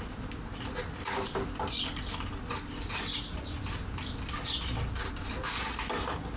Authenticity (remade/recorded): remade